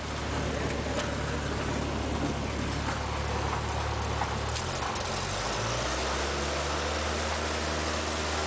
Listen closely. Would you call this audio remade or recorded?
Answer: recorded